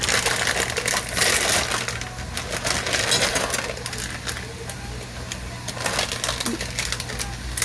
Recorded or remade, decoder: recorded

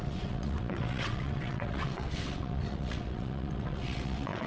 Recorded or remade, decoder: remade, vocoder, WaveNeXt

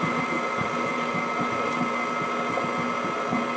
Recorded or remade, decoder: recorded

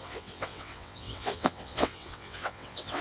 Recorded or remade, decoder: remade, vocoder, WaveNeXt